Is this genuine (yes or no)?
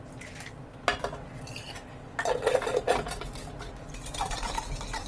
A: yes